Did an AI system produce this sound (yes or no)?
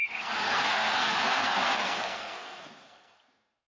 yes